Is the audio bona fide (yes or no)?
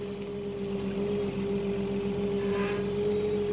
yes